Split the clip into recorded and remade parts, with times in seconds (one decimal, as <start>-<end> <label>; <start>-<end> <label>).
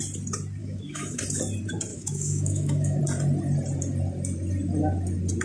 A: 0.0-0.6 recorded; 0.6-1.2 remade; 1.2-1.9 recorded; 1.9-3.0 remade; 3.0-5.4 recorded